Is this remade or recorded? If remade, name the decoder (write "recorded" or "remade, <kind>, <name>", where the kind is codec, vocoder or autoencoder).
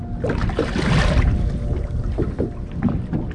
recorded